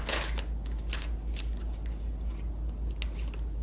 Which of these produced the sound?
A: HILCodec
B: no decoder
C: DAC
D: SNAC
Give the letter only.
B